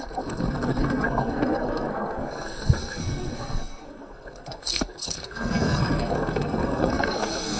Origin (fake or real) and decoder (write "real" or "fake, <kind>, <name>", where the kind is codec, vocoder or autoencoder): fake, codec, SNAC